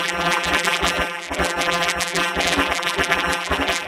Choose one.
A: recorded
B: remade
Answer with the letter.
B